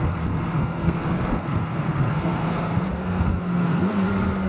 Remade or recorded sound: remade